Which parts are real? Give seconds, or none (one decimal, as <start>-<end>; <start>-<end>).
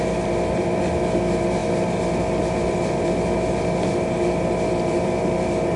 0.0-5.8